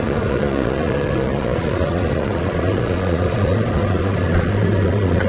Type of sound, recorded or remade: remade